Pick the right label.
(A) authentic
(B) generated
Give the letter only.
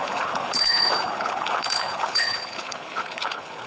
B